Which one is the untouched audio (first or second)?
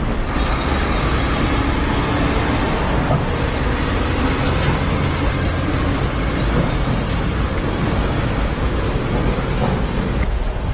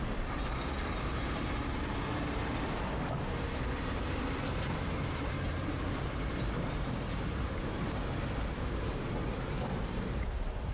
first